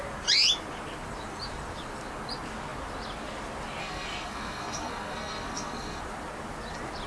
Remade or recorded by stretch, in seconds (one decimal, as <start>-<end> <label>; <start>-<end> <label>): 0.0-3.8 recorded; 3.8-6.0 remade; 6.0-7.1 recorded